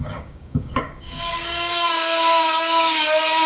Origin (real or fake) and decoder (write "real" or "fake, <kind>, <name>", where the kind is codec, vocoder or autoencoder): fake, codec, DAC